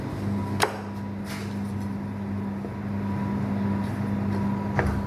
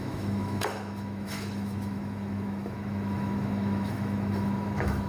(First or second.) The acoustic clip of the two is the first